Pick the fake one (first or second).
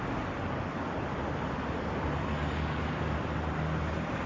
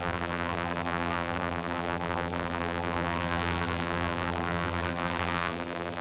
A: second